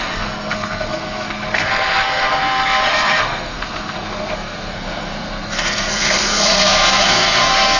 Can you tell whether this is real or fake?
fake